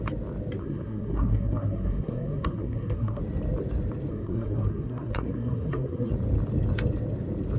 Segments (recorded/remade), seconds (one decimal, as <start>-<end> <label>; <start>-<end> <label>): 0.0-0.6 recorded; 0.6-3.2 remade; 3.2-4.1 recorded; 4.1-6.1 remade; 6.1-7.6 recorded